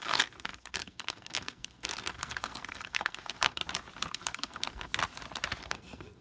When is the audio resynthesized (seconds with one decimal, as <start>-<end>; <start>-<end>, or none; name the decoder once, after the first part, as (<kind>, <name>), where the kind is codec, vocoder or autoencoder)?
0.0-3.6 (codec, SNAC); 4.1-4.9; 5.6-6.2